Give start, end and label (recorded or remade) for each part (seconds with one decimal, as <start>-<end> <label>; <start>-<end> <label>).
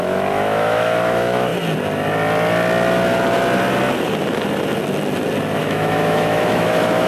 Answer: 0.0-1.5 remade; 1.5-5.6 recorded; 5.6-7.1 remade